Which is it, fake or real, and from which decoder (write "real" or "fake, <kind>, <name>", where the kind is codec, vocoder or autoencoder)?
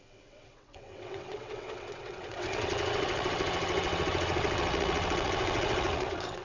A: fake, vocoder, WaveNeXt